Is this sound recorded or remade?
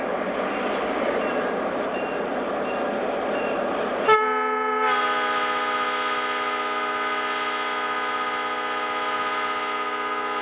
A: recorded